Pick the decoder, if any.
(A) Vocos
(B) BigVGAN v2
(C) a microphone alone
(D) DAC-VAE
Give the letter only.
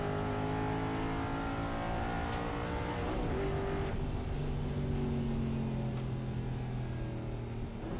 C